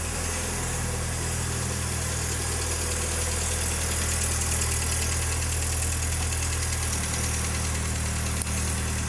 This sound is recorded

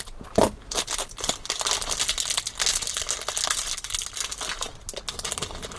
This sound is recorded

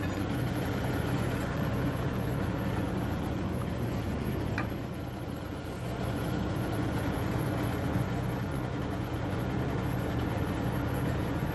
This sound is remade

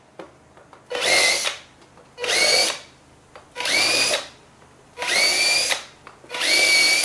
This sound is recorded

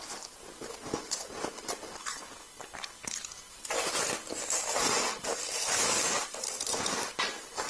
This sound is recorded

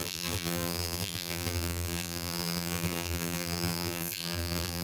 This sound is remade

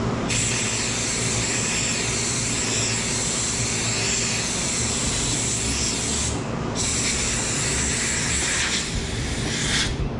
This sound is recorded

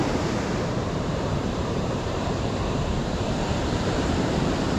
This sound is remade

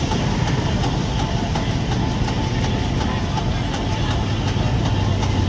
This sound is recorded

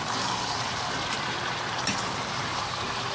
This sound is remade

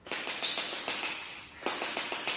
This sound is remade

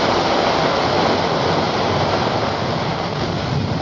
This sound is recorded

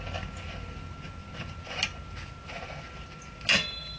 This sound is recorded